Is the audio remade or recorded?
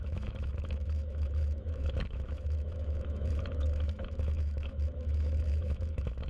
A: remade